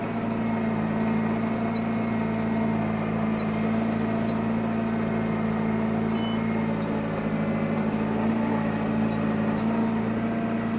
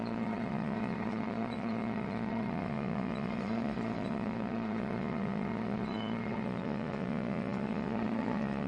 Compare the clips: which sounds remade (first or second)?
second